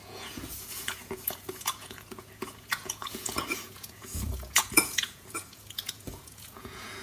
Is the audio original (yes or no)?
no